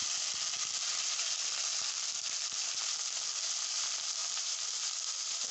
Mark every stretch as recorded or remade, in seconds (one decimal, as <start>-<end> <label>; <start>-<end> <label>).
0.0-4.2 recorded; 4.2-4.8 remade; 4.8-5.5 recorded